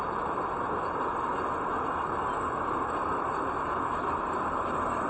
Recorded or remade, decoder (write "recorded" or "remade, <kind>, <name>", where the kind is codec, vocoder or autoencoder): recorded